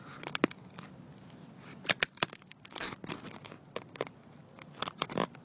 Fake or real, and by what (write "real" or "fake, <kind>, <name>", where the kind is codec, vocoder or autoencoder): real